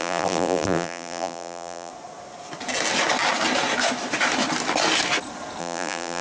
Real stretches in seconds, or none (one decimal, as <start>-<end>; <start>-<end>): 1.9-5.6